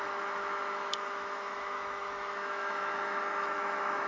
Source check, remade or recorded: remade